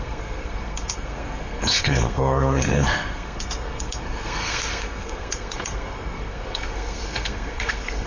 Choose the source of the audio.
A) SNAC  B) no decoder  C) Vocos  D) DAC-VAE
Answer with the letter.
A